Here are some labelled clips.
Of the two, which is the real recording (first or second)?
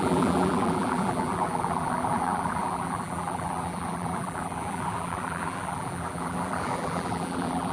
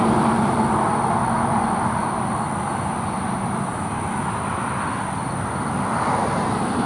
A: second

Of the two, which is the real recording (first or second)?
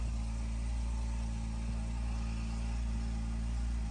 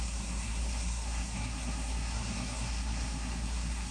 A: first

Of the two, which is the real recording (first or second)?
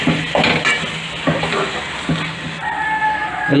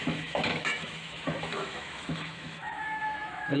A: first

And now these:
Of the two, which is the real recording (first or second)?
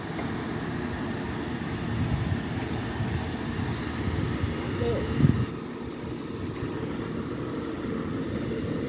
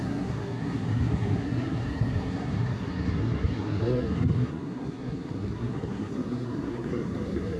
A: first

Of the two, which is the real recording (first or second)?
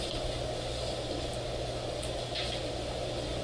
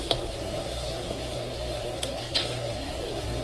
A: first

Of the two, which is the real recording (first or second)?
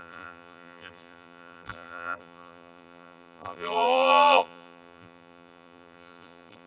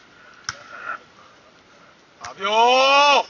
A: second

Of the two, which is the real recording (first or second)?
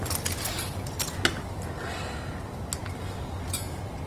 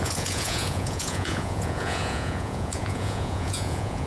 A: first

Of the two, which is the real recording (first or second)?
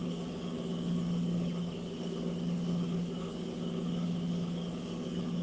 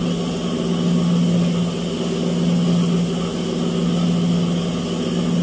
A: second